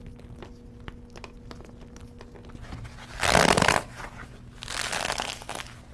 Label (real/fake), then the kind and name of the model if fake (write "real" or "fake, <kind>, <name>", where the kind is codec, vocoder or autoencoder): real